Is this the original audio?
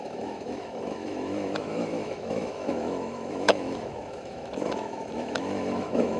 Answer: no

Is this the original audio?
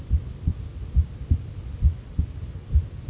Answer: yes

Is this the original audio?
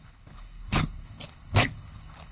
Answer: no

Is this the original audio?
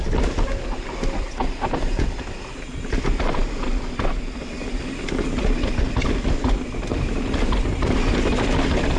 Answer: yes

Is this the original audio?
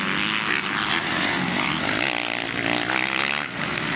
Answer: yes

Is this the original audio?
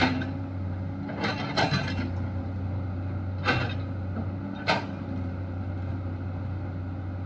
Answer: yes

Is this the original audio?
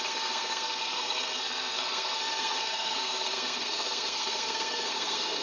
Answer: no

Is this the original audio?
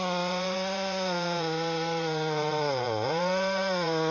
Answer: no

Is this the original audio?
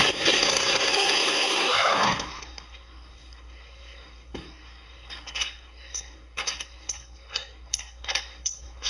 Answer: no